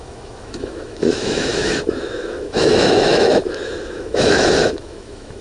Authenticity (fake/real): fake